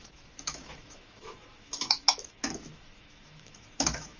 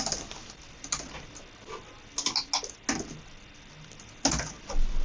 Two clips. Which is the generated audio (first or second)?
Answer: first